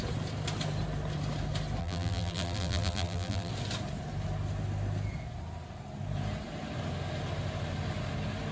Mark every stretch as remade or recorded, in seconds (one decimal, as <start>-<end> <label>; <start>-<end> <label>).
0.0-1.8 recorded; 1.8-3.5 remade; 3.5-8.5 recorded